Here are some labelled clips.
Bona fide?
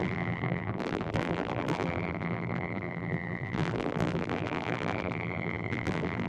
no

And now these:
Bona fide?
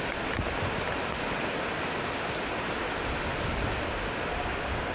yes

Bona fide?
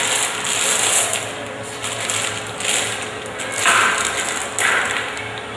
yes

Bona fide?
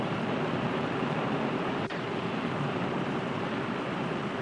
no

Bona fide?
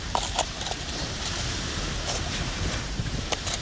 no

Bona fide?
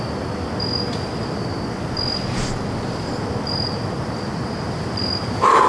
yes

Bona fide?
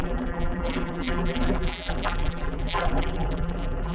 no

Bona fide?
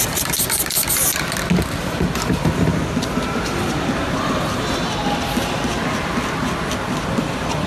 yes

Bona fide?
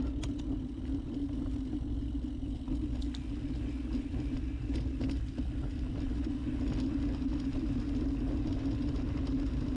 yes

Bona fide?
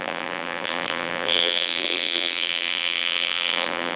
no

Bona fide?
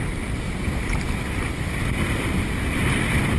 no